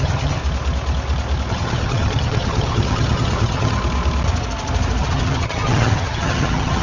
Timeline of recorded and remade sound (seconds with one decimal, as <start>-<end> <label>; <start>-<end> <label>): 0.0-0.4 remade; 0.4-1.5 recorded; 1.5-3.8 remade; 3.8-5.0 recorded; 5.0-6.8 remade